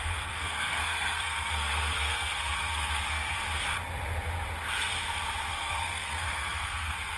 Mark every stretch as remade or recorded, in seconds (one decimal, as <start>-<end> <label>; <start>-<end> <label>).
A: 0.0-3.4 remade; 3.4-5.5 recorded; 5.5-7.2 remade